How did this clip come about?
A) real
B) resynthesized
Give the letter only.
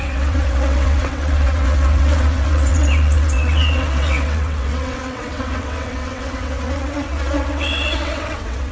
B